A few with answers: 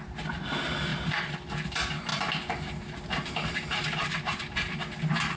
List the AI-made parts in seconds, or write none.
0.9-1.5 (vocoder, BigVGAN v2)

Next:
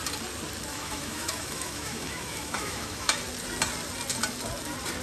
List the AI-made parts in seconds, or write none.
0.7-3.2 (autoencoder, DAC-VAE)

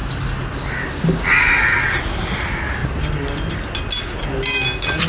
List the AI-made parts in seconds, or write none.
none

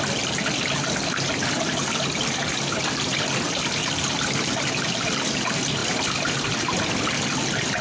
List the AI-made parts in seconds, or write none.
none

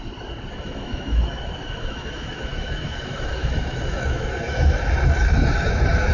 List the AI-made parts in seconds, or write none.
0.5-6.1 (autoencoder, DAC-VAE)

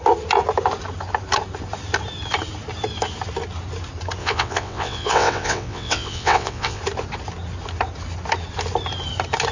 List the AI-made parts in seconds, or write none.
4.2-6.8 (vocoder, WaveNeXt)

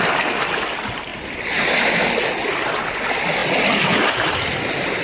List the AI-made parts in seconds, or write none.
none

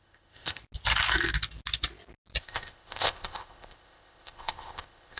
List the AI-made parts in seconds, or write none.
0.0-0.6 (codec, ZipCodec); 2.4-5.2